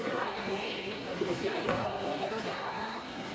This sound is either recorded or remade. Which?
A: remade